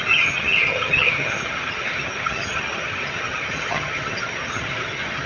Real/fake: fake